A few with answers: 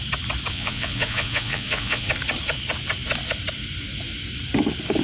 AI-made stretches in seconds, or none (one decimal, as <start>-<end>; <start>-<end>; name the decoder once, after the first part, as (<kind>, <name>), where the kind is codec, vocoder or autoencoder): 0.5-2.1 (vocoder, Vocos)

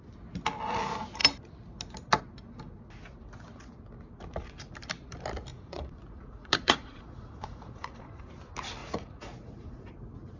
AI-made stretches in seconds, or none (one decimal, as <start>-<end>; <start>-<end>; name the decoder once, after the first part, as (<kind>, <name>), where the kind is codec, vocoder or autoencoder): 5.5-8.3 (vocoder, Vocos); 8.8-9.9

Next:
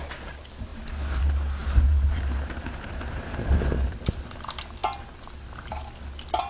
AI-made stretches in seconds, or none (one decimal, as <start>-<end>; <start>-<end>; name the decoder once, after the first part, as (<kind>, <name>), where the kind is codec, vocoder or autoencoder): 1.6-4.3 (vocoder, BigVGAN v2)

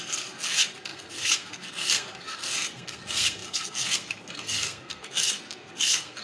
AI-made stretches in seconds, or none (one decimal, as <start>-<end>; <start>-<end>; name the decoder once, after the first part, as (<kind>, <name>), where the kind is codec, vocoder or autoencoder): 0.0-6.2 (codec, SNAC)

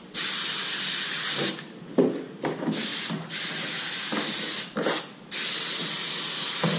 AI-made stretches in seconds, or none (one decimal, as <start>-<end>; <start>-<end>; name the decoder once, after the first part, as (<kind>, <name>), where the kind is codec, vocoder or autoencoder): none